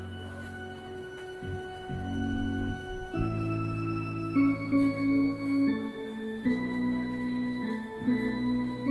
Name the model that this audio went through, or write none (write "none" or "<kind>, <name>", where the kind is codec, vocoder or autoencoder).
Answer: autoencoder, DAC-VAE